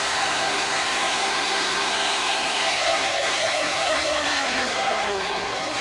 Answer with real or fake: fake